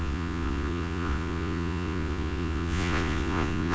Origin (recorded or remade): remade